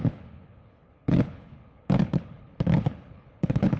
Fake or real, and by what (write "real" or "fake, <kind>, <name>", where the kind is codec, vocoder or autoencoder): fake, codec, HILCodec